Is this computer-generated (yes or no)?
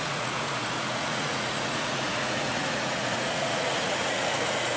yes